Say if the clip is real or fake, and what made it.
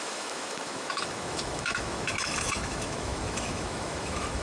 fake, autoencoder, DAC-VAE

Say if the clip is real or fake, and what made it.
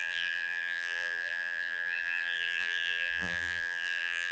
fake, vocoder, BigVGAN v2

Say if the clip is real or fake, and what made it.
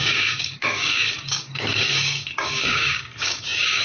fake, codec, DAC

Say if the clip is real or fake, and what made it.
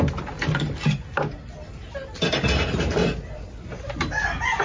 real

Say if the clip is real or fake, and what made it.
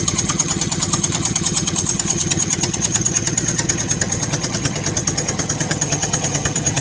fake, vocoder, HiFi-GAN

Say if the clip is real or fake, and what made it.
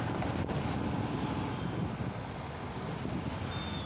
real